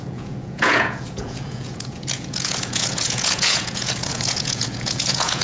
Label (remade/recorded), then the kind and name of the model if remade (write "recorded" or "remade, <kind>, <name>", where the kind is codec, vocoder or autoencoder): remade, vocoder, Vocos